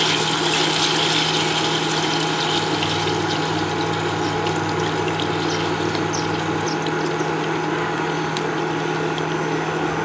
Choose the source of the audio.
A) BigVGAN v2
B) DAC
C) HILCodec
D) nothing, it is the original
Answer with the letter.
D